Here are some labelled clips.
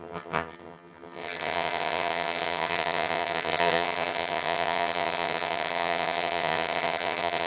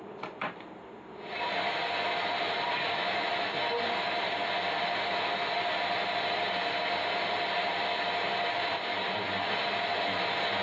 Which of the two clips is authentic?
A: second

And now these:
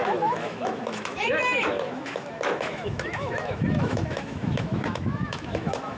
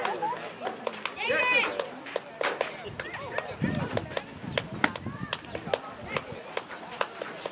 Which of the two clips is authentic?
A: second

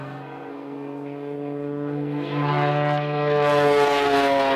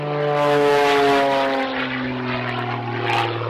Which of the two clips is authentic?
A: second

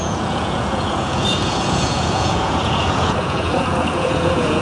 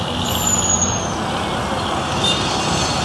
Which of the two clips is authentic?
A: second